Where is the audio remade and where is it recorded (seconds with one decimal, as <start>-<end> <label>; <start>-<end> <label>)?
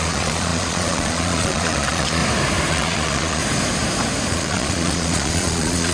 0.0-2.2 remade; 2.2-2.7 recorded; 2.7-3.4 remade; 3.4-4.3 recorded; 4.3-5.9 remade